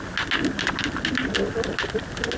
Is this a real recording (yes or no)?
yes